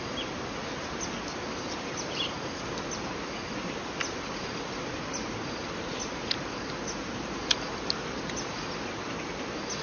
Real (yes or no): yes